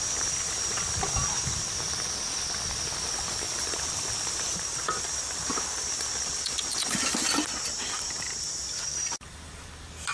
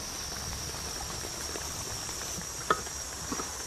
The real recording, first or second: second